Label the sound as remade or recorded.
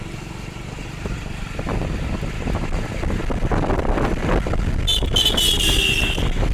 recorded